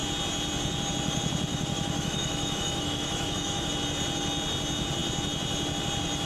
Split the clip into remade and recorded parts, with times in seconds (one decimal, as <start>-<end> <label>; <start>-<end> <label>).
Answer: 0.0-1.5 recorded; 1.5-3.7 remade; 3.7-6.3 recorded